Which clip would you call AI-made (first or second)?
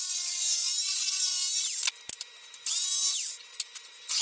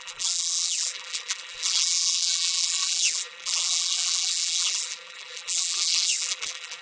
second